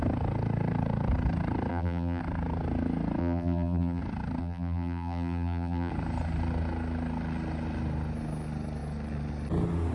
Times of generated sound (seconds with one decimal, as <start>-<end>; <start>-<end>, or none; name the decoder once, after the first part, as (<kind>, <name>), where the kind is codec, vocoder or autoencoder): 1.7-2.2 (vocoder, BigVGAN v2); 3.2-4.0; 4.4-5.9